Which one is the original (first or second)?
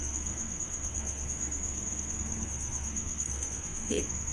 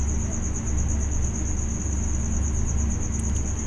second